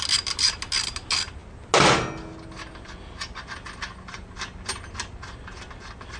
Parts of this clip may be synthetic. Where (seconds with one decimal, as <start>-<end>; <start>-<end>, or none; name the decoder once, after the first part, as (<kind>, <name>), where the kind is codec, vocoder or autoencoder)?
none